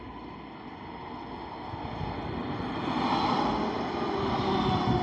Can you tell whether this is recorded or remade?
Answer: recorded